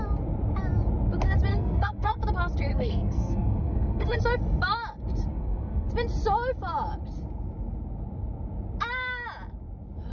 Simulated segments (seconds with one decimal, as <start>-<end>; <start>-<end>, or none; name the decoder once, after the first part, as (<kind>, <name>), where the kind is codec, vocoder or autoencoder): 1.5-2.2 (codec, SNAC); 2.7-4.2; 5.3-5.9